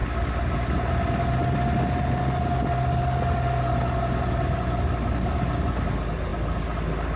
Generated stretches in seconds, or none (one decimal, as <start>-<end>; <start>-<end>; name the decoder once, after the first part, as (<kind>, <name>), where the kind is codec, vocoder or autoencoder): none